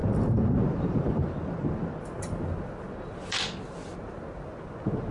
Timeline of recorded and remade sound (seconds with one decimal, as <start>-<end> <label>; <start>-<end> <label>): 0.0-1.3 remade; 1.3-5.1 recorded